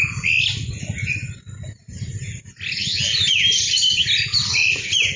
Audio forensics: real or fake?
real